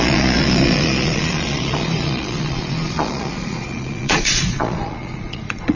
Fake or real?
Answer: fake